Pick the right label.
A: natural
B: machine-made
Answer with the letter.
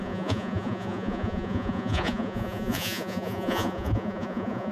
B